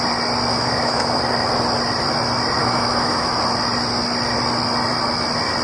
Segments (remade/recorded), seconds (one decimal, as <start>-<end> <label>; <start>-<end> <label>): 0.0-0.5 recorded; 0.5-1.2 remade; 1.2-2.6 recorded; 2.6-3.3 remade; 3.3-5.6 recorded